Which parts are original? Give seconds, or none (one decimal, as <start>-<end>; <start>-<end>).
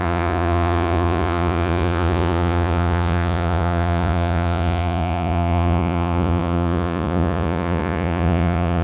none